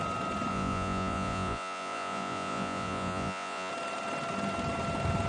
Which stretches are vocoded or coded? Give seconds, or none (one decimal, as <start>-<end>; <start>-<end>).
0.5-3.7